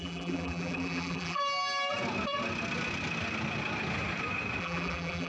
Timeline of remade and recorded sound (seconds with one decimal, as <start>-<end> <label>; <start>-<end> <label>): 0.0-1.4 remade; 1.4-4.6 recorded; 4.6-5.3 remade